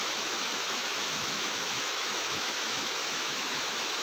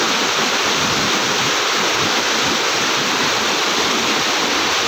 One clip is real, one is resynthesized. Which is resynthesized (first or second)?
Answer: first